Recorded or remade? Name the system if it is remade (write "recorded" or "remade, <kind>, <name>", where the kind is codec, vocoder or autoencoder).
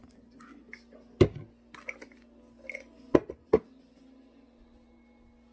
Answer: recorded